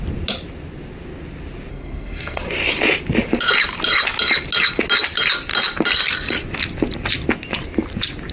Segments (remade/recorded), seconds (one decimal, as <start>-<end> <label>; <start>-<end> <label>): 0.0-1.7 recorded; 1.7-2.4 remade; 2.4-8.3 recorded